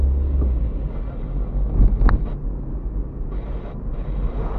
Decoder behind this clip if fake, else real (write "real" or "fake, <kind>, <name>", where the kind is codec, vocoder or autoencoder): real